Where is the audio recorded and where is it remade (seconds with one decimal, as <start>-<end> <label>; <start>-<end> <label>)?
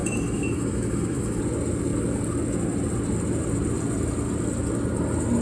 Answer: 0.0-1.4 remade; 1.4-5.4 recorded